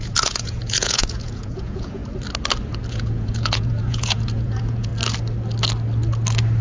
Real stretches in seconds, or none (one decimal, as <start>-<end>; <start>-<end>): 2.0-2.9; 4.9-6.6